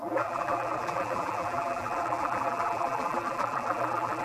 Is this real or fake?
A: fake